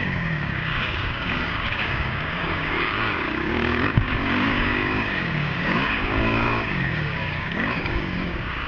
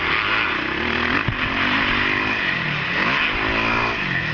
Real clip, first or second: second